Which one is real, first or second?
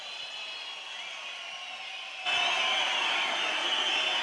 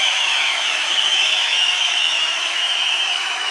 first